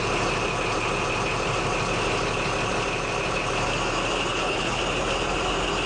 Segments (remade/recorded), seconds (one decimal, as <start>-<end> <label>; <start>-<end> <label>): 0.0-4.3 recorded; 4.3-4.8 remade; 4.8-5.9 recorded